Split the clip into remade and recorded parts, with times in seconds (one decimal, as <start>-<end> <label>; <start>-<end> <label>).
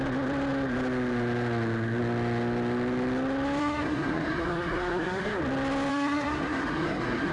0.0-3.6 recorded; 3.6-5.4 remade; 5.4-5.9 recorded; 5.9-7.3 remade